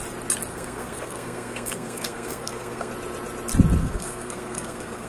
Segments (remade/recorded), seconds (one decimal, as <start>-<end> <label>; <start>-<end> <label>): 0.0-0.5 recorded; 0.5-2.9 remade; 2.9-3.8 recorded; 3.8-5.1 remade

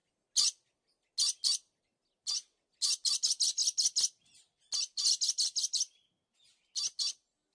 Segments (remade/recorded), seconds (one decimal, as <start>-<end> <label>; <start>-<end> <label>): 0.0-7.5 recorded

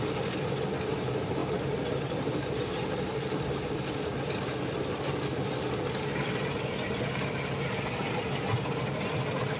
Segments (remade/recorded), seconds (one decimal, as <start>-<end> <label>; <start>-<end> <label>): 0.0-9.6 recorded

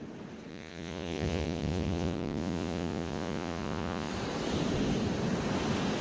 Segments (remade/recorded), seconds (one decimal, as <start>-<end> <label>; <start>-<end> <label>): 0.0-0.5 recorded; 0.5-4.1 remade; 4.1-6.0 recorded

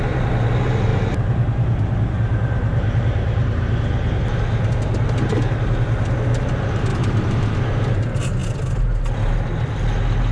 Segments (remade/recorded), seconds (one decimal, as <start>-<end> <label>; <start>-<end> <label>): 0.0-0.9 recorded; 0.9-4.7 remade; 4.7-6.9 recorded; 6.9-7.6 remade; 7.6-10.3 recorded

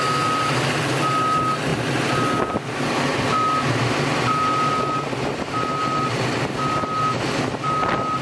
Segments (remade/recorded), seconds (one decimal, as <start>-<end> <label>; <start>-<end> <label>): 0.0-8.2 recorded